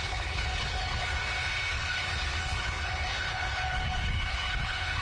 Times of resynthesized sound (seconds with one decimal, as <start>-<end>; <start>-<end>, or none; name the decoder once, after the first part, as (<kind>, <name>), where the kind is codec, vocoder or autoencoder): 0.0-1.2 (codec, HILCodec); 1.7-5.0